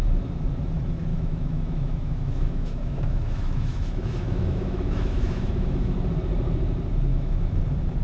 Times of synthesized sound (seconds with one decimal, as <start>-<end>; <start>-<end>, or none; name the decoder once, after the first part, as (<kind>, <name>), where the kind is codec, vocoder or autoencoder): 1.1-5.9 (autoencoder, DAC-VAE); 7.1-7.6